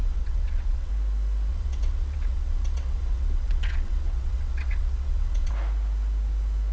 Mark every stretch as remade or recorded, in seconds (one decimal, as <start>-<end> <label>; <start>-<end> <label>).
0.0-0.9 remade; 0.9-1.5 recorded; 1.5-5.5 remade; 5.5-6.7 recorded